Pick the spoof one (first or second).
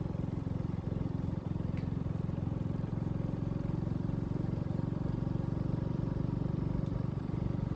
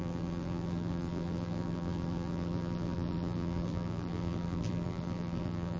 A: second